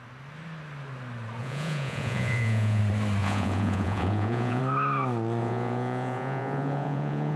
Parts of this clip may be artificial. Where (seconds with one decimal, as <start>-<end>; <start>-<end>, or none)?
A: 1.4-2.8; 3.2-4.6; 5.4-7.4